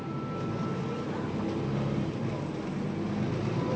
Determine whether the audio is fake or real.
real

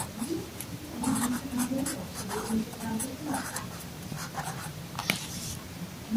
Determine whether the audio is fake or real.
fake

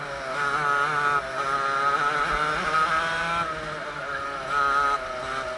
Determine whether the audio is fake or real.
real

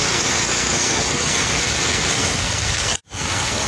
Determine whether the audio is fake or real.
fake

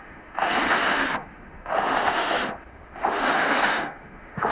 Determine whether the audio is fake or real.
fake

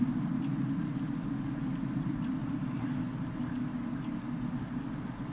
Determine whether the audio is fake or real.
real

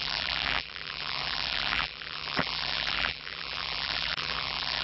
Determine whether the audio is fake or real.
fake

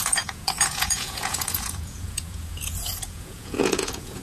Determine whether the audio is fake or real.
fake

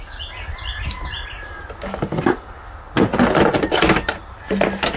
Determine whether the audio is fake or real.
real